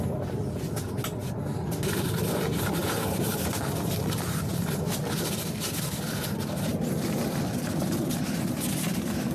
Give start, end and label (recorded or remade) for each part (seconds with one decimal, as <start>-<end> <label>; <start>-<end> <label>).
0.0-9.3 recorded